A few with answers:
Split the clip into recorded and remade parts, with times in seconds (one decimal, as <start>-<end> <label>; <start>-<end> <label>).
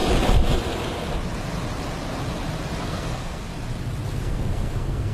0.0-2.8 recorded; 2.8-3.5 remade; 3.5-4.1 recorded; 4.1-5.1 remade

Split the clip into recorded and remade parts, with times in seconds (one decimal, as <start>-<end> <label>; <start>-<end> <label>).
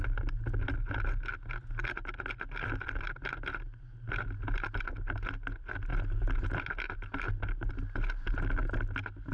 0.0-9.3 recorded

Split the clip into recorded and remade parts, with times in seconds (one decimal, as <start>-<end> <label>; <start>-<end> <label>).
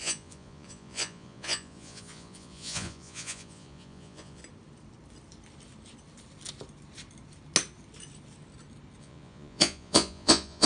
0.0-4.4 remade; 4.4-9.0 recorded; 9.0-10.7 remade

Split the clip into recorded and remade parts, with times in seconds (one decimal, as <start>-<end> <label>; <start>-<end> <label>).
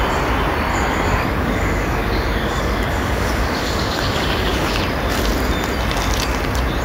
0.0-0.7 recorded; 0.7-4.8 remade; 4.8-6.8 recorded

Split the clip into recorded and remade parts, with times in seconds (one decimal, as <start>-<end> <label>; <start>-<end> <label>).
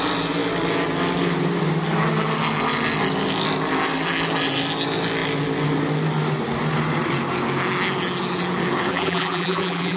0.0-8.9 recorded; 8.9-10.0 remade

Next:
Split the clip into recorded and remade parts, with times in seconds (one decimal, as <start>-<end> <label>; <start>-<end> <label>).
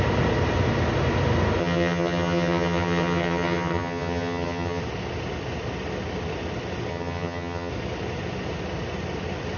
0.0-1.6 recorded; 1.6-4.8 remade; 4.8-6.9 recorded; 6.9-7.7 remade; 7.7-9.6 recorded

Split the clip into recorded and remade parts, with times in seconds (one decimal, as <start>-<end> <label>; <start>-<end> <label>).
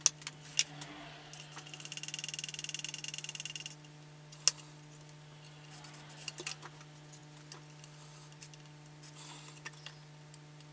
0.0-10.7 recorded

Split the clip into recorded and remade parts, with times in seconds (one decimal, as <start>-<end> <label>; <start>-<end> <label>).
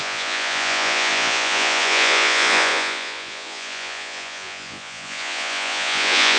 0.0-6.4 remade